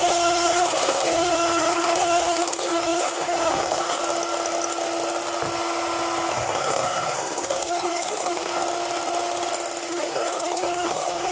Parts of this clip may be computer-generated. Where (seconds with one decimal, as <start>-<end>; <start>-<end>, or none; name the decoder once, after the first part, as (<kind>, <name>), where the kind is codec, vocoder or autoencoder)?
0.0-4.0 (codec, SNAC); 6.3-8.5; 9.9-11.3